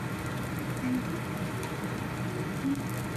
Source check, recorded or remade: recorded